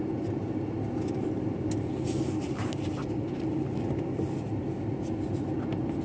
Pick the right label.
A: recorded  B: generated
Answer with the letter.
A